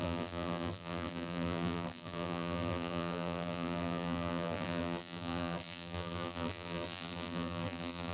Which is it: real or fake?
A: fake